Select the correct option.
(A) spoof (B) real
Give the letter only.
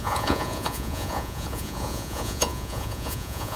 A